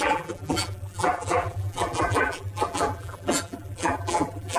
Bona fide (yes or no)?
no